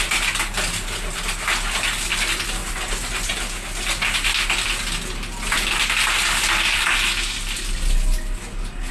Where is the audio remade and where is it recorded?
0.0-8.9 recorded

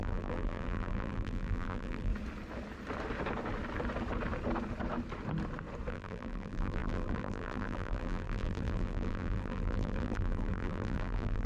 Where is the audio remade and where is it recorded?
0.0-2.1 remade; 2.1-5.9 recorded; 5.9-11.5 remade

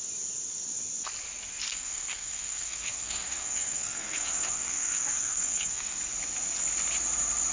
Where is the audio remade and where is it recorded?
0.0-1.7 recorded; 1.7-6.0 remade; 6.0-7.5 recorded

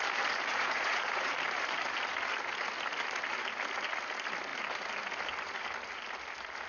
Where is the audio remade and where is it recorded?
0.0-0.5 recorded; 0.5-1.3 remade; 1.3-6.7 recorded

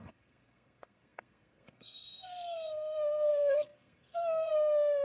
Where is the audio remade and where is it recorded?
0.0-5.0 remade